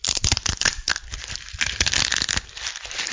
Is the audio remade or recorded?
recorded